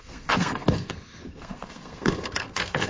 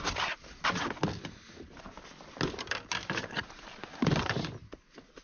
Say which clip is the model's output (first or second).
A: first